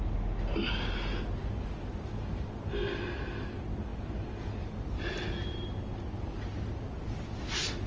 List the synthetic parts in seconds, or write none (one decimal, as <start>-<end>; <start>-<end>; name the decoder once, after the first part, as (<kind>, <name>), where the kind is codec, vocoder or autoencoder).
none